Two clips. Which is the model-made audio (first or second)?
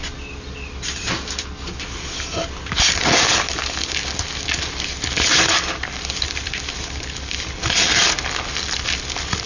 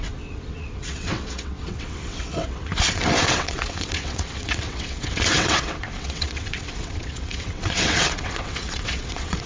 second